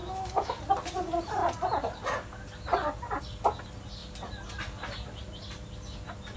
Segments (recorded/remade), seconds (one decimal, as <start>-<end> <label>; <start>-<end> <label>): 0.0-0.6 remade; 0.6-6.4 recorded